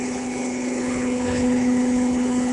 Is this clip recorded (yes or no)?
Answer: no